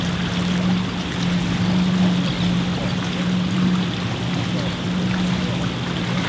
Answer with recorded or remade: recorded